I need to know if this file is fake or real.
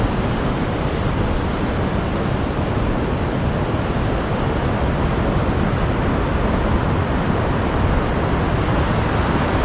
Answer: real